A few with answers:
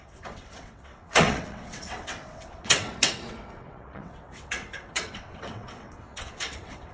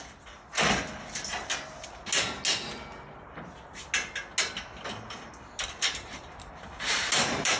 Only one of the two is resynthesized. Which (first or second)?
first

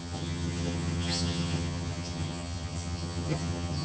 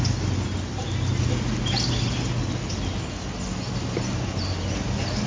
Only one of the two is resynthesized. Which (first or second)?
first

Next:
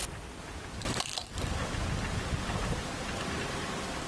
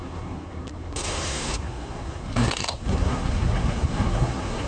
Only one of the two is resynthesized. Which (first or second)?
second